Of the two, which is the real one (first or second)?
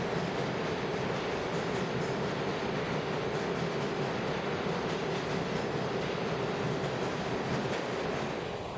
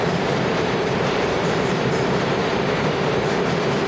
first